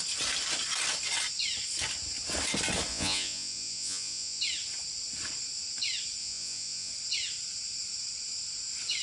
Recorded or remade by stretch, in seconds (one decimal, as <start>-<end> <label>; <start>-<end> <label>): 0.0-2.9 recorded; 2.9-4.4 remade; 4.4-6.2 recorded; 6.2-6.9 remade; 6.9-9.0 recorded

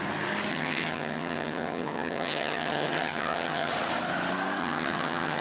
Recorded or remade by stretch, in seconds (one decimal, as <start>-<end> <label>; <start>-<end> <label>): 0.0-0.5 recorded; 0.5-3.7 remade; 3.7-4.6 recorded; 4.6-5.4 remade

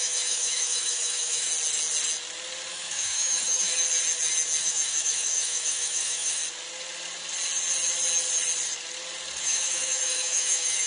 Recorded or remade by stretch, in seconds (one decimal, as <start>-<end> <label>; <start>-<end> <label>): 0.0-1.5 remade; 1.5-2.7 recorded; 2.7-3.7 remade; 3.7-4.6 recorded; 4.6-6.4 remade; 6.4-9.4 recorded; 9.4-10.9 remade